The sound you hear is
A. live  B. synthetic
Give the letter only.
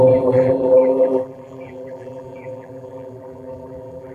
B